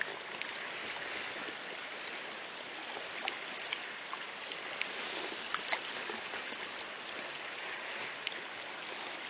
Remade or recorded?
recorded